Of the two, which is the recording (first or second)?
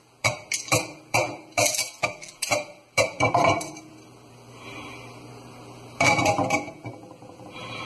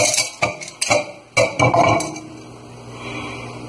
second